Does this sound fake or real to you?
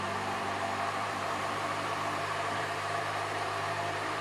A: fake